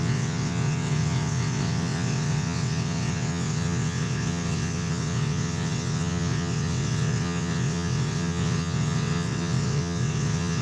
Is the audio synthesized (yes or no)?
yes